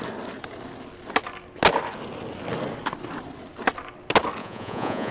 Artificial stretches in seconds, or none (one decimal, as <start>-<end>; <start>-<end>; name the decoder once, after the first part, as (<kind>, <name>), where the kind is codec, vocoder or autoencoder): 4.4-5.1 (vocoder, Vocos)